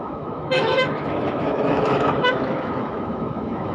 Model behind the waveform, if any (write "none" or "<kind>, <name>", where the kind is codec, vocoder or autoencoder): autoencoder, DAC-VAE